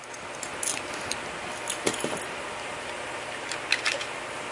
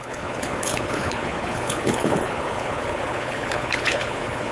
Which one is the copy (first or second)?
second